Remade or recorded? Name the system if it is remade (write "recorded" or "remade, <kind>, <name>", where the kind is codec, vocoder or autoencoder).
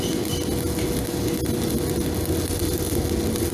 recorded